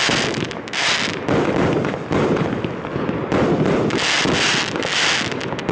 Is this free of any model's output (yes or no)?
yes